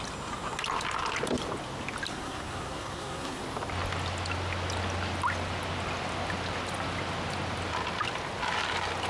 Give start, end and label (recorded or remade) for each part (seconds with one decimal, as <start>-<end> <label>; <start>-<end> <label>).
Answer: 0.0-2.1 recorded; 2.1-3.4 remade; 3.4-9.1 recorded